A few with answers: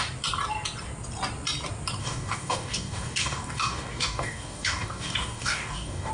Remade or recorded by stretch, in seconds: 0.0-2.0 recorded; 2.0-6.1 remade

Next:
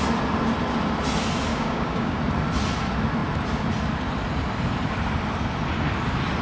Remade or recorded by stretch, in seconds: 0.0-1.5 recorded; 1.5-2.2 remade; 2.2-6.4 recorded

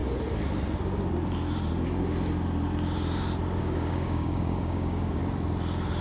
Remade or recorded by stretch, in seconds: 0.0-3.6 recorded; 3.6-5.2 remade; 5.2-6.0 recorded

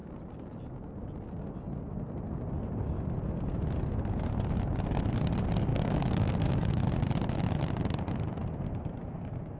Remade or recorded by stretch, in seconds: 0.0-5.7 recorded; 5.7-6.8 remade; 6.8-9.6 recorded

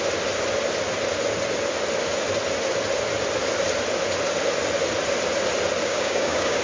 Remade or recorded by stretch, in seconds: 0.0-5.8 recorded; 5.8-6.6 remade

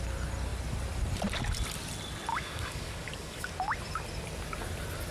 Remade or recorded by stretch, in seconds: 0.0-2.3 recorded; 2.3-3.5 remade; 3.5-5.1 recorded

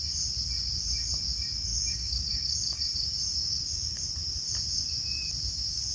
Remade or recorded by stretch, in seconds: 0.0-1.7 recorded; 1.7-2.8 remade; 2.8-3.3 recorded; 3.3-4.0 remade; 4.0-5.9 recorded

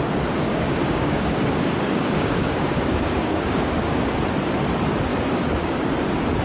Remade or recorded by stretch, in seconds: 0.0-0.5 recorded; 0.5-4.2 remade; 4.2-5.1 recorded; 5.1-5.7 remade; 5.7-6.4 recorded